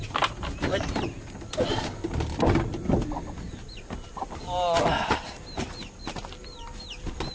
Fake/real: real